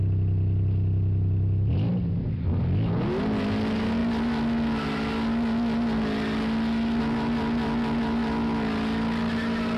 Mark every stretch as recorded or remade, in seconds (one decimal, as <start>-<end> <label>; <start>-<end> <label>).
0.0-9.8 recorded